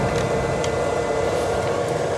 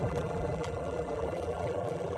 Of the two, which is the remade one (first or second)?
second